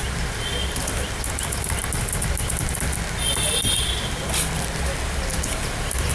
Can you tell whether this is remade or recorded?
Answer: recorded